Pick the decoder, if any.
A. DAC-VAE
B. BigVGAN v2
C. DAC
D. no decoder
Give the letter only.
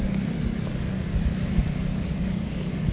C